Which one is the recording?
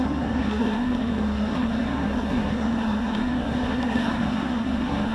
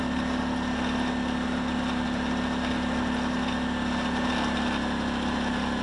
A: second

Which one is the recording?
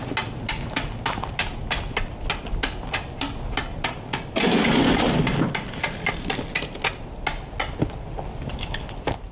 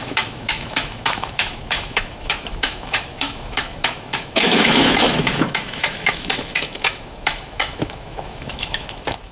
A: first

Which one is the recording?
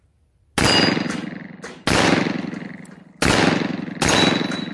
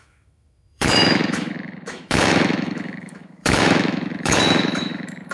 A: first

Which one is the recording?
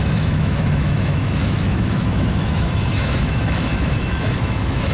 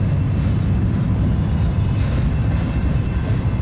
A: second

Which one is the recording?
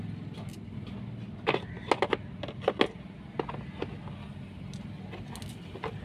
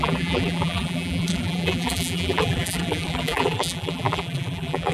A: first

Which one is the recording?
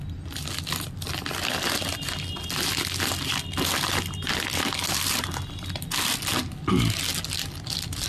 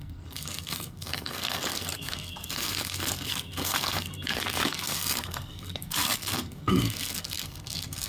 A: first